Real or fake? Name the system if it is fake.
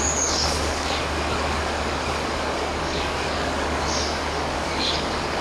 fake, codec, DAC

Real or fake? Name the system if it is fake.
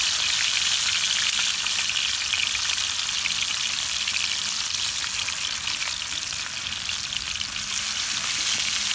real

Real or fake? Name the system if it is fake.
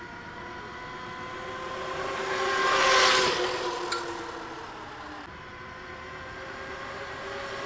real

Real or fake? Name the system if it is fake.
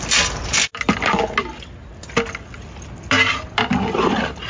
real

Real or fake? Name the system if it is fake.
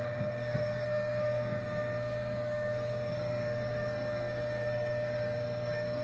fake, codec, SNAC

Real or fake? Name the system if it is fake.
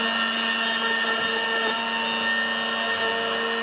real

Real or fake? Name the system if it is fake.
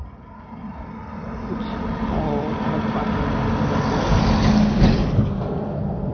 real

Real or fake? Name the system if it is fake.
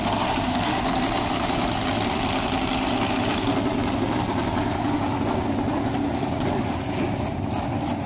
real